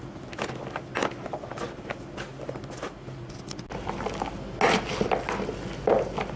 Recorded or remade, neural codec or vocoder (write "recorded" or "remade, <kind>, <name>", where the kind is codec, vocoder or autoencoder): recorded